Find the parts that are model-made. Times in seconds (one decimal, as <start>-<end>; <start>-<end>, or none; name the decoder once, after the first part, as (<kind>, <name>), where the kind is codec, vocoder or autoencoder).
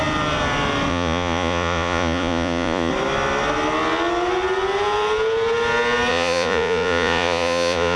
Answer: 0.9-2.9 (vocoder, Vocos); 6.1-8.0